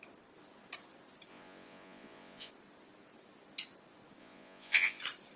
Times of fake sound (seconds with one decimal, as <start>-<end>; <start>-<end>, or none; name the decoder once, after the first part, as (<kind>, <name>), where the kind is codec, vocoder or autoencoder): 1.3-2.5 (vocoder, Vocos); 4.2-5.0